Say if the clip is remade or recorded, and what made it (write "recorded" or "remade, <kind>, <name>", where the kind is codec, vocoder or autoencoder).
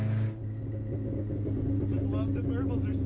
recorded